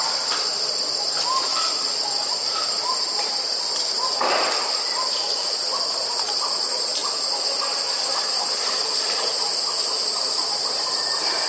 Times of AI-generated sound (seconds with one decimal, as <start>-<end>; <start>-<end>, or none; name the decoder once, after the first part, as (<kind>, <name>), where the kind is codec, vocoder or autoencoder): 2.5-3.6 (vocoder, BigVGAN v2)